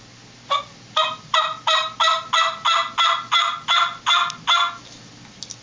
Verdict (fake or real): real